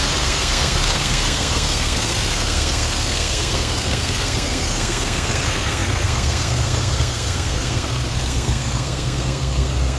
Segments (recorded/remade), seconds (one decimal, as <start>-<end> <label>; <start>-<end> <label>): 0.0-10.0 remade